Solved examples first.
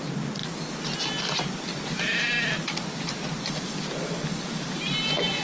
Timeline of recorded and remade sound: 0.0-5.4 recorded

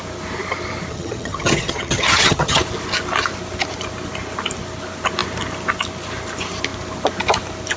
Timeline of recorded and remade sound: 0.0-0.9 recorded; 0.9-2.6 remade; 2.6-7.8 recorded

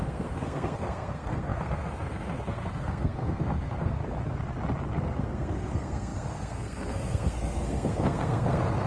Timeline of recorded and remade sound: 0.0-4.0 remade; 4.0-5.0 recorded; 5.0-8.9 remade

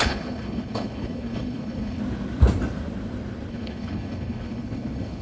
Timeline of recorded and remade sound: 0.0-2.0 remade; 2.0-3.5 recorded; 3.5-5.2 remade

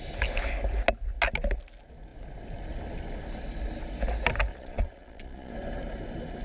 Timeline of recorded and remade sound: 0.0-4.5 recorded; 4.5-5.5 remade; 5.5-6.4 recorded